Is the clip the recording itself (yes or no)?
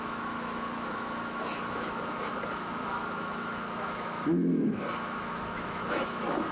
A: no